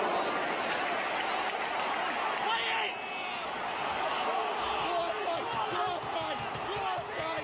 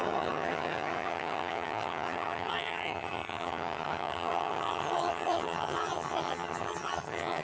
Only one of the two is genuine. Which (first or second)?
first